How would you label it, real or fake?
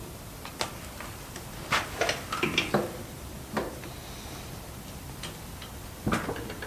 fake